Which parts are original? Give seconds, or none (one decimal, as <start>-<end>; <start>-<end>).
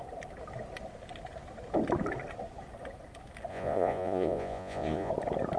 0.0-3.5; 5.1-5.6